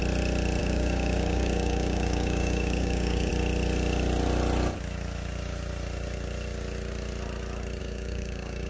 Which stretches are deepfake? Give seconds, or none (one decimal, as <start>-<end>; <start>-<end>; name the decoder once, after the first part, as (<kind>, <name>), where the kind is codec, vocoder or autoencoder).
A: 0.6-3.3 (codec, DAC); 7.8-8.7